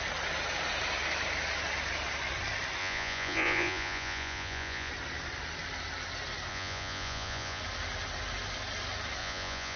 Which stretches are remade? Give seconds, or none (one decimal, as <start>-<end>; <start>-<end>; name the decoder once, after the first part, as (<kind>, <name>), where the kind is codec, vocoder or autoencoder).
2.8-4.9 (vocoder, Vocos); 6.5-7.6; 9.2-9.8